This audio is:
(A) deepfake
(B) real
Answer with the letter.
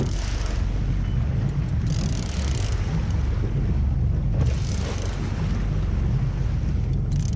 B